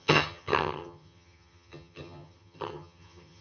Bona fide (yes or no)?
no